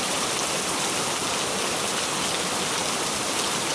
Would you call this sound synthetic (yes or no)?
no